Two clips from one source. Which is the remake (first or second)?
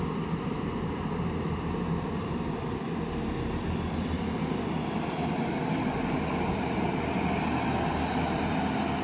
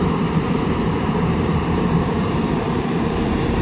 second